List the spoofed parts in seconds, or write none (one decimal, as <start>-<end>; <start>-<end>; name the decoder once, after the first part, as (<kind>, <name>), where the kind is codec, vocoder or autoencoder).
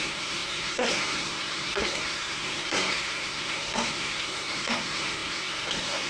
0.0-6.1 (codec, SNAC)